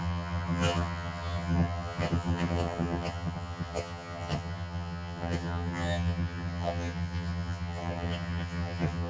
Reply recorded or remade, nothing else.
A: remade